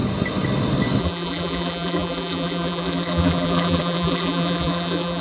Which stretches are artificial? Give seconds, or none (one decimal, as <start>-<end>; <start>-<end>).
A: 1.0-5.2